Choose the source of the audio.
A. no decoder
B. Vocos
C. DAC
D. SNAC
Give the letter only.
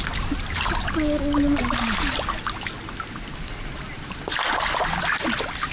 A